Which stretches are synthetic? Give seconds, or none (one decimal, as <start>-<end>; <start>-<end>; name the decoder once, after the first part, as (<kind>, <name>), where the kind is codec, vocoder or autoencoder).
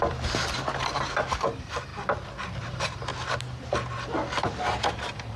0.0-1.9 (vocoder, BigVGAN v2); 2.6-3.1; 4.9-5.4